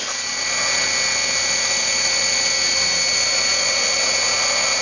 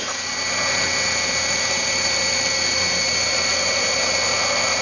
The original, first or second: first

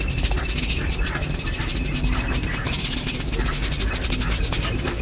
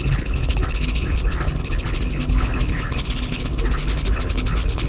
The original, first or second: first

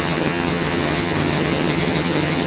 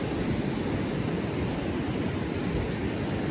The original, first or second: second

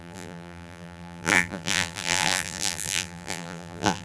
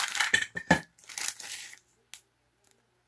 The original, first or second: second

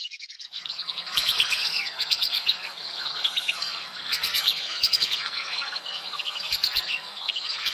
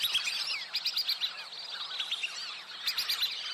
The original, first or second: second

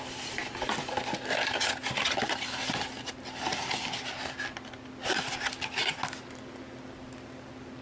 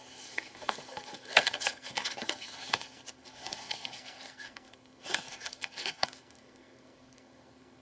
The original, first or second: first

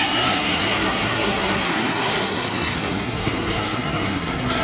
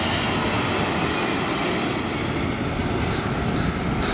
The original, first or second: second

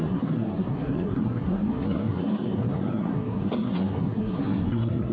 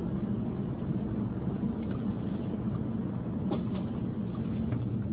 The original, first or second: second